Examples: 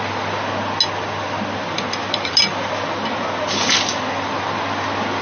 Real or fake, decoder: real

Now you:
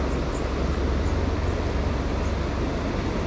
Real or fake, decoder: real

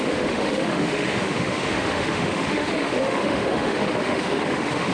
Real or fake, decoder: fake, autoencoder, DAC-VAE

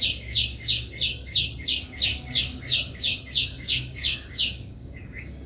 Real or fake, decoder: fake, codec, DAC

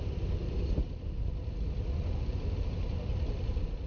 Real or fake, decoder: real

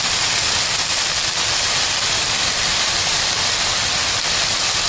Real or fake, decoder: real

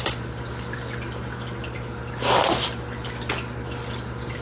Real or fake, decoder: real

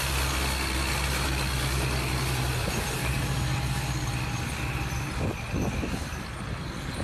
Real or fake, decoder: real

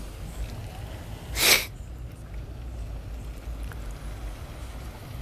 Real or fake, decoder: real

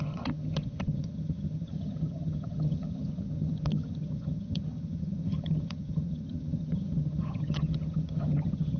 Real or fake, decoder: fake, vocoder, HiFi-GAN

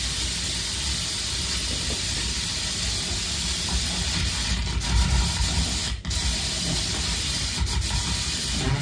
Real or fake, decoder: real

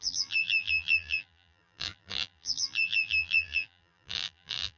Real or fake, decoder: fake, vocoder, BigVGAN v2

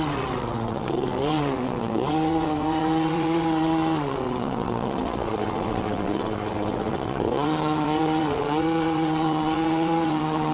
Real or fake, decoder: fake, vocoder, WaveNeXt